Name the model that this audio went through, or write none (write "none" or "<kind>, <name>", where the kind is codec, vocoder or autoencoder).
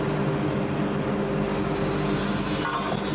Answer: none